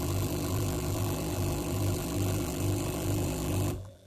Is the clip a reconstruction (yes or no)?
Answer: yes